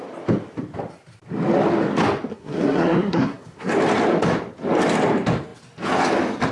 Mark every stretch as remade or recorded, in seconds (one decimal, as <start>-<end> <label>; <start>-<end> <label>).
0.0-2.3 recorded; 2.3-3.7 remade; 3.7-6.5 recorded